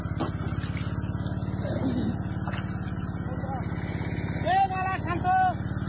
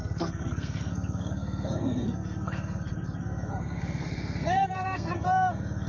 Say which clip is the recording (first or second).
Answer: first